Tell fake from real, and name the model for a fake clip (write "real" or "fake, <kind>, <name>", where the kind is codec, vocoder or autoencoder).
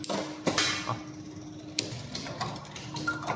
real